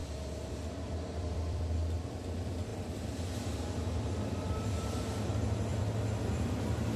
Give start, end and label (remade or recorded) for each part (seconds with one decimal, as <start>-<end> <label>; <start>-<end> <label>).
0.0-0.5 recorded; 0.5-7.0 remade